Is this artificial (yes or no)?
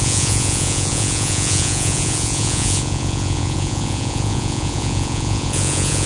yes